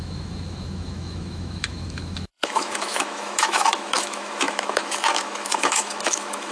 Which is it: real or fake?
fake